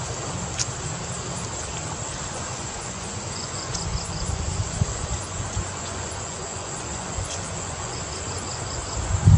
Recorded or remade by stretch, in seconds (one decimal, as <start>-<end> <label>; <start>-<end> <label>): 0.0-2.3 recorded; 2.3-9.4 remade